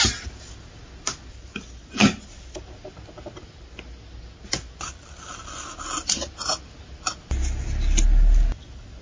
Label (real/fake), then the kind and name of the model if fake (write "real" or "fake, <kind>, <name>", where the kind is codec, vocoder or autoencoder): real